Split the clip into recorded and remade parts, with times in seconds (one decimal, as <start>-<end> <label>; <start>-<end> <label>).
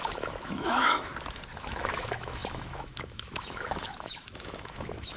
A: 0.0-1.1 remade; 1.1-1.6 recorded; 1.6-5.2 remade